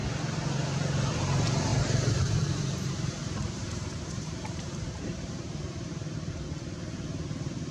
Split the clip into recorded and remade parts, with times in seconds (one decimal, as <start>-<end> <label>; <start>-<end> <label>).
0.0-1.7 recorded; 1.7-6.3 remade; 6.3-7.7 recorded